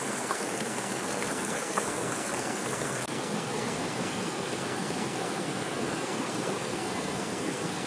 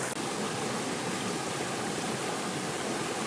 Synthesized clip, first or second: first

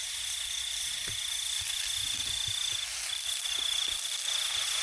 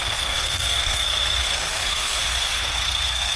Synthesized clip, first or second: second